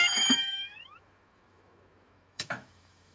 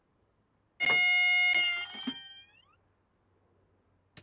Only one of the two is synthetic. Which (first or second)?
first